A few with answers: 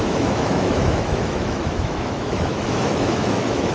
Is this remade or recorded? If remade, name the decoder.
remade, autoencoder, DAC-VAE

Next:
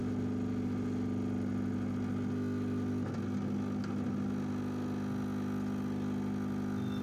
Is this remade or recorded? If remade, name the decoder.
recorded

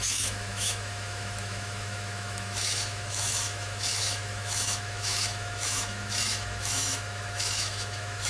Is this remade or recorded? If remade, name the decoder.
remade, autoencoder, DAC-VAE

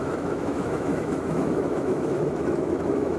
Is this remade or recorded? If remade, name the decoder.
remade, autoencoder, DAC-VAE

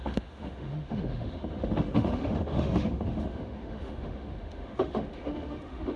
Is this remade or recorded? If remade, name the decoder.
remade, autoencoder, DAC-VAE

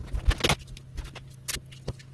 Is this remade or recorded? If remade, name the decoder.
recorded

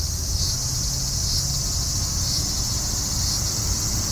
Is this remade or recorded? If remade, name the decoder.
recorded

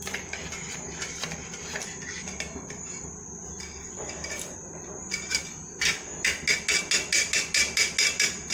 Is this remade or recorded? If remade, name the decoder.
recorded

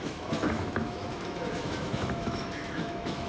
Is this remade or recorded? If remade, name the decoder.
remade, autoencoder, DAC-VAE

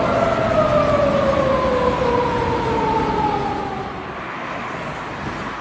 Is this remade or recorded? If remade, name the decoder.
recorded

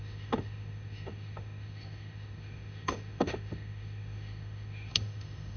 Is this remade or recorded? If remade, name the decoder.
remade, autoencoder, DAC-VAE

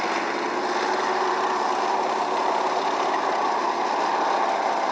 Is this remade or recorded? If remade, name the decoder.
recorded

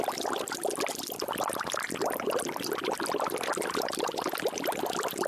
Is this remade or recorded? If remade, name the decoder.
recorded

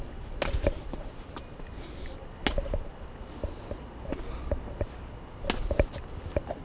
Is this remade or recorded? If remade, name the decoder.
recorded